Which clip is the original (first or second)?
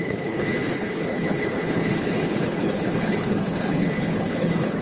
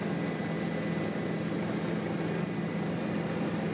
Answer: second